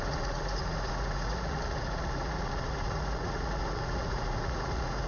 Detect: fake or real fake